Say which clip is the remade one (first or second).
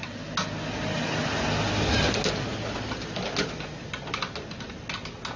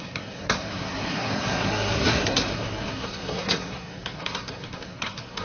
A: second